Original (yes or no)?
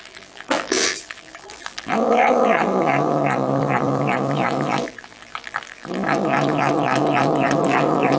no